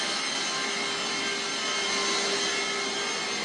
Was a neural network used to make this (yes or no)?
no